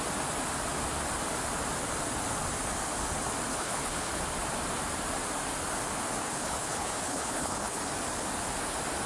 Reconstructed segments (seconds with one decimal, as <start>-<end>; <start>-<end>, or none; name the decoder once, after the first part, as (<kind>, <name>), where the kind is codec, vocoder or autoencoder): 3.5-4.1 (codec, HILCodec); 6.2-7.8